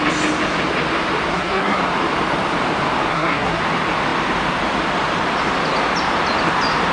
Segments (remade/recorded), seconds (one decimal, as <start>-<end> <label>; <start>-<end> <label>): 0.0-1.3 recorded; 1.3-1.8 remade; 1.8-3.1 recorded; 3.1-3.6 remade; 3.6-6.9 recorded